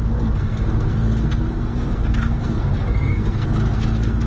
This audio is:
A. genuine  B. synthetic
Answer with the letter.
B